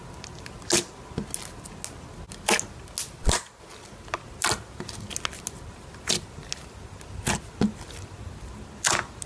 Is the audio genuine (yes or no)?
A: yes